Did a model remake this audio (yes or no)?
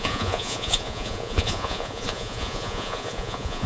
yes